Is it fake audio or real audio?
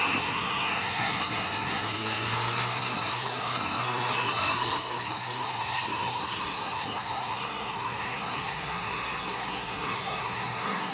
fake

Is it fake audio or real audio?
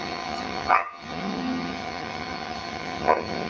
fake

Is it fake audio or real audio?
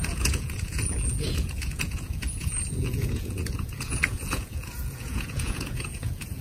fake